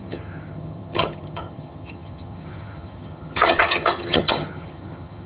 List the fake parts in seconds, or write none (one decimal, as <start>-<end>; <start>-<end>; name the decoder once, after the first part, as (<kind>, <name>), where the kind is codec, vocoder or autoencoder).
0.0-5.3 (vocoder, HiFi-GAN)